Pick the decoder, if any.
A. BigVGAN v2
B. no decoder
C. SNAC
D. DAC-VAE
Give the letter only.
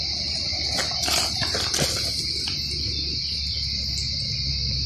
B